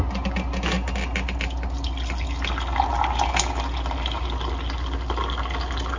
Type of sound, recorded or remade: recorded